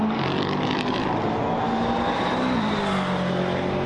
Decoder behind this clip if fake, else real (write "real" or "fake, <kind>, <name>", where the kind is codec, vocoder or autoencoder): real